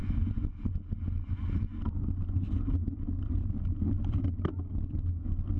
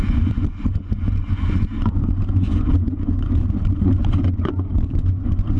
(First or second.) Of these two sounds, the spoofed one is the second